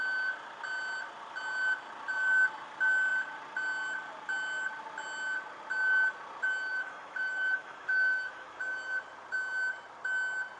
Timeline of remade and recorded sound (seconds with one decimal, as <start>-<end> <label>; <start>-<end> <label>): 0.0-6.7 recorded; 6.7-8.6 remade; 8.6-10.6 recorded